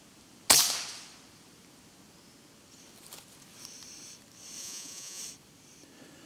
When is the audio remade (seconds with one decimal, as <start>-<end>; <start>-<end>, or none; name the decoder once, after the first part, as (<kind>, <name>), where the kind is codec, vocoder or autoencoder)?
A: 4.6-5.2 (vocoder, Vocos)